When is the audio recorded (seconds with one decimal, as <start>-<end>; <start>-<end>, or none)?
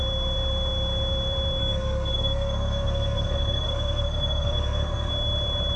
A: 0.0-1.6; 5.1-5.8